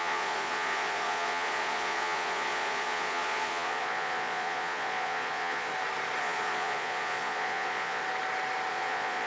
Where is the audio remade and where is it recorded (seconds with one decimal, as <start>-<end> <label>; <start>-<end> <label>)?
0.0-5.7 remade; 5.7-6.2 recorded; 6.2-8.0 remade; 8.0-8.7 recorded; 8.7-9.3 remade